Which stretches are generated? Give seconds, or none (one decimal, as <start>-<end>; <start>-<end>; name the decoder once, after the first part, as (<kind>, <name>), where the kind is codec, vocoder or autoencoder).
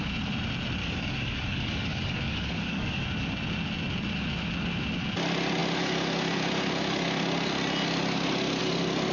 0.8-3.0 (codec, DAC)